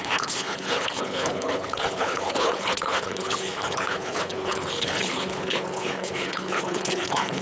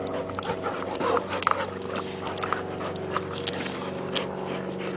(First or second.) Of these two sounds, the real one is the second